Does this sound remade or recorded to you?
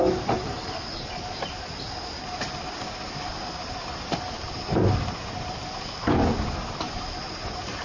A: recorded